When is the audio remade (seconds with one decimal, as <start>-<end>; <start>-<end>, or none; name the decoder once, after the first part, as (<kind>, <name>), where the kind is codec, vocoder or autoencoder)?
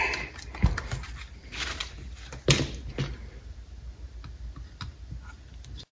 none